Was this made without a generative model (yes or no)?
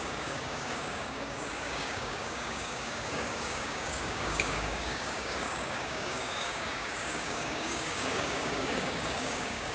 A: no